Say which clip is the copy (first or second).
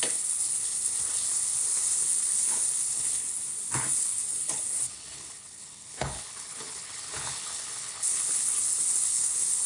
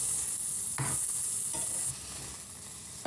first